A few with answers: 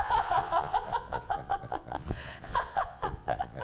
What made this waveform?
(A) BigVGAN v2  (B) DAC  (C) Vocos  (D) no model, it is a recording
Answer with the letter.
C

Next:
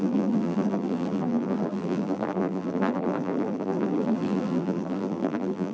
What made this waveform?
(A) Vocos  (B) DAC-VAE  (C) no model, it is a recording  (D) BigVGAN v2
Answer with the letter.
D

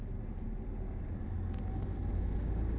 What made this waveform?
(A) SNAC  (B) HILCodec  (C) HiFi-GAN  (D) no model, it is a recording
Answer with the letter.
D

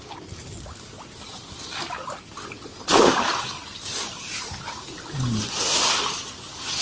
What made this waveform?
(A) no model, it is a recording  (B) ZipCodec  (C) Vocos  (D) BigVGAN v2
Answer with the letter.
A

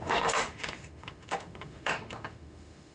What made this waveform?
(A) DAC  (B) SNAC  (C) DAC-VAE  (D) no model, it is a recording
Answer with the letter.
C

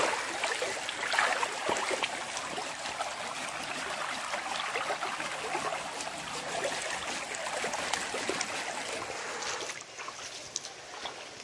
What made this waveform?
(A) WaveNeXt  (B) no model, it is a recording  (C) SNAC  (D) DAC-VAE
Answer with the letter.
B